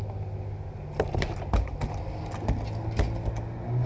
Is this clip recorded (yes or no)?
yes